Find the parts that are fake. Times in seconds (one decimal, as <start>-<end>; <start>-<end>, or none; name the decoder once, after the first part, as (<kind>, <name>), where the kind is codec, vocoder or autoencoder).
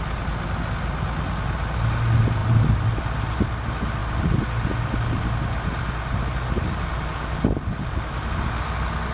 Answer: none